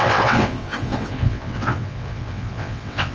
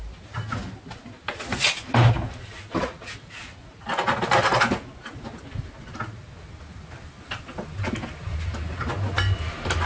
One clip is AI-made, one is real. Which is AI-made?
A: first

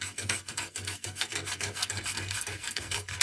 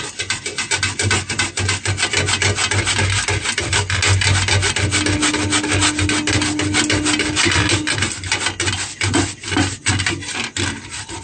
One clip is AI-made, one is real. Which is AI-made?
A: first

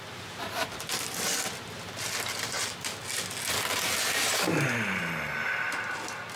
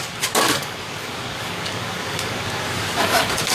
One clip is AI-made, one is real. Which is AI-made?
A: second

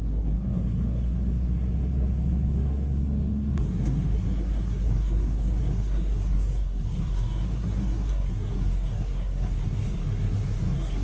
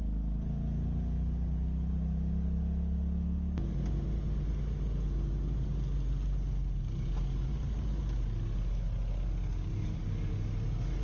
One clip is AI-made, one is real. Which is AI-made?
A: first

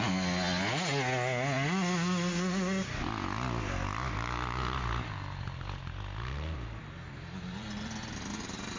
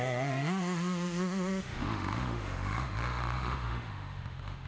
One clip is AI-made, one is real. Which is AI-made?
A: second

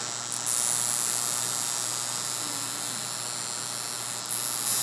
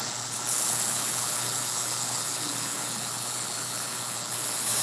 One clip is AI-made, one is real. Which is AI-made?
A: second